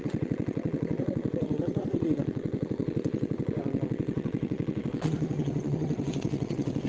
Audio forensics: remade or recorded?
remade